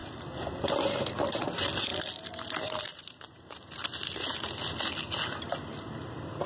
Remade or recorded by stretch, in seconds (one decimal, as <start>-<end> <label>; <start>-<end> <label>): 0.0-6.5 recorded